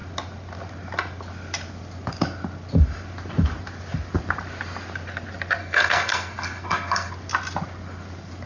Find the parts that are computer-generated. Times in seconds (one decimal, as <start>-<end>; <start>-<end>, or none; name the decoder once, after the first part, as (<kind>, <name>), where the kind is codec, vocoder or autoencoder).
5.6-7.1 (codec, SNAC)